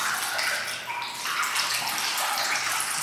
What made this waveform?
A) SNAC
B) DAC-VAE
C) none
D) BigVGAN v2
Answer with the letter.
C